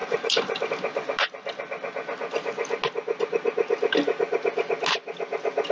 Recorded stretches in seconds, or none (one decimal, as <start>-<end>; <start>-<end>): 0.7-5.7